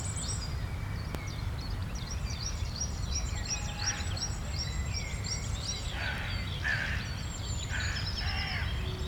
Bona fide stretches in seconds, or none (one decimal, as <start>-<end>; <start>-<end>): 0.0-1.8; 3.1-9.1